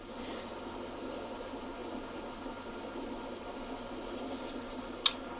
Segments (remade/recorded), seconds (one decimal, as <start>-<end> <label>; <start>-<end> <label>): 0.0-5.4 recorded